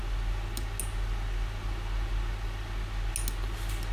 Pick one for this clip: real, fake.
real